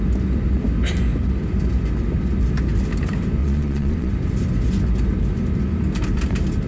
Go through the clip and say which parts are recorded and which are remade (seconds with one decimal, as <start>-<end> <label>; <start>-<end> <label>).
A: 0.0-3.4 recorded; 3.4-4.1 remade; 4.1-6.7 recorded